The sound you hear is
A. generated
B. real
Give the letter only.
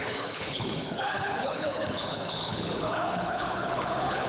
A